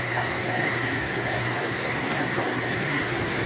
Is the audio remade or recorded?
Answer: remade